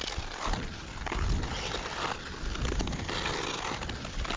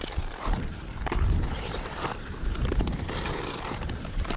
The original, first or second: first